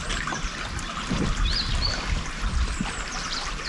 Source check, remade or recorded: remade